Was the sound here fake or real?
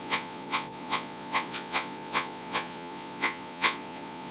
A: fake